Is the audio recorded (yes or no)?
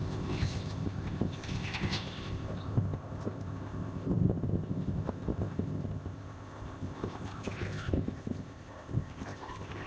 no